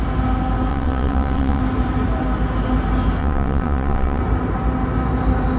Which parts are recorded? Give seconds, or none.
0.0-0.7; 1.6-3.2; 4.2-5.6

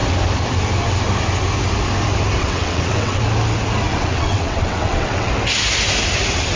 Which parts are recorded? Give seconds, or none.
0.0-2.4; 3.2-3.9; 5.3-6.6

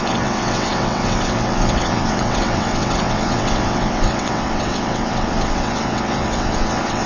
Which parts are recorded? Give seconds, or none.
none

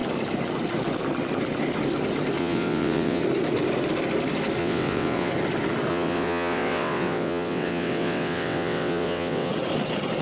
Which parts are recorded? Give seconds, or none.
0.0-2.4; 3.2-4.6; 5.3-5.9; 9.5-10.2

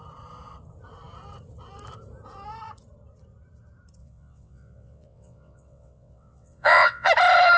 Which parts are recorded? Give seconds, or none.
0.0-4.0; 7.1-7.6

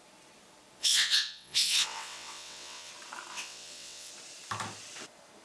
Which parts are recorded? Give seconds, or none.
0.0-0.8; 2.9-3.3; 4.1-5.4

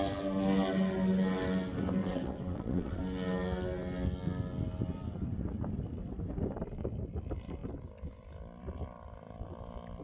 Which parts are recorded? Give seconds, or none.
0.0-2.0; 3.0-10.0

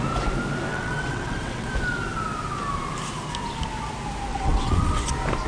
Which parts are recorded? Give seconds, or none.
0.0-0.7; 1.7-4.3; 5.0-5.5